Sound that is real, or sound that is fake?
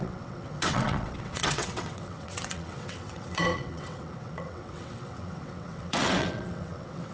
fake